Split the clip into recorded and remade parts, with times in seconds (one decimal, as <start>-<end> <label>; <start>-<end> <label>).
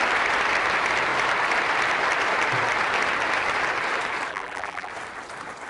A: 0.0-4.3 recorded; 4.3-4.9 remade; 4.9-5.7 recorded